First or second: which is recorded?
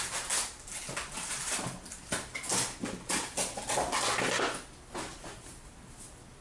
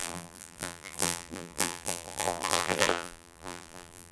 first